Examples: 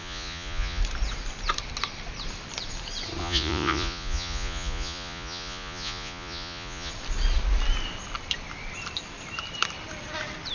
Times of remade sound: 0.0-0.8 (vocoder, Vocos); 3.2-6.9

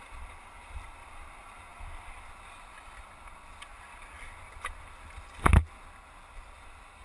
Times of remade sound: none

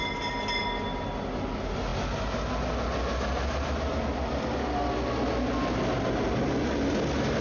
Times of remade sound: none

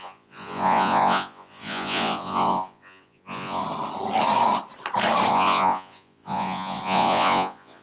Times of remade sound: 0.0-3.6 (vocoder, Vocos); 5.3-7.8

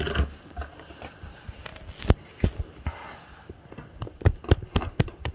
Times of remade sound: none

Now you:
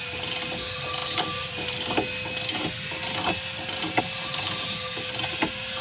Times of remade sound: none

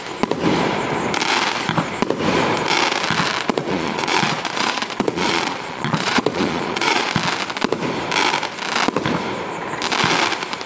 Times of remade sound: 3.6-7.1 (vocoder, Vocos)